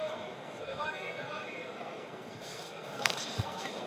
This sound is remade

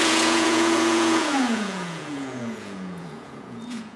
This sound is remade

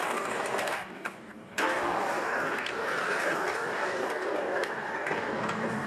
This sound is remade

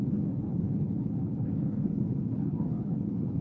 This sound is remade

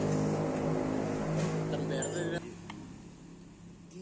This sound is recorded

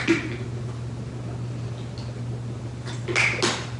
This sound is recorded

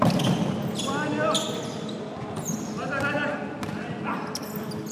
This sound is recorded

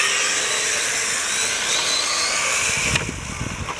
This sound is recorded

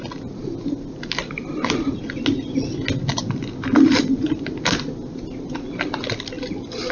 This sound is recorded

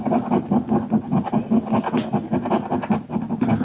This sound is recorded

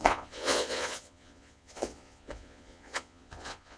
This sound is remade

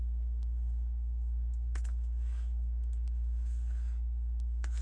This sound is remade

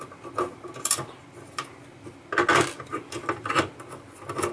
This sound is recorded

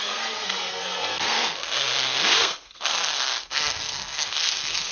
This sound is remade